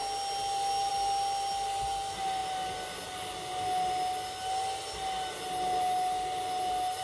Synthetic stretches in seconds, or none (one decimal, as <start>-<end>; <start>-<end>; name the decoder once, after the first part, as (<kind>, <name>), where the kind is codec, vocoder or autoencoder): none

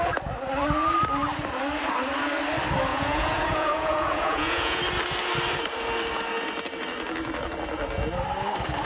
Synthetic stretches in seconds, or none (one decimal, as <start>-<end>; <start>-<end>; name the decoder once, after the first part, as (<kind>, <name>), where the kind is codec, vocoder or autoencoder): 2.9-4.8 (vocoder, Vocos)